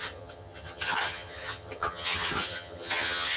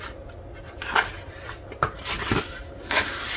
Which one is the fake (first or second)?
first